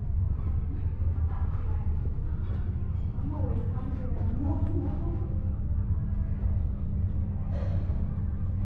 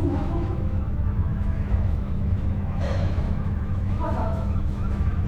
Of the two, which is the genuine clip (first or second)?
first